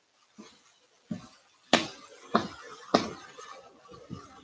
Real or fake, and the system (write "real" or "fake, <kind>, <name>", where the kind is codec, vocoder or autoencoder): real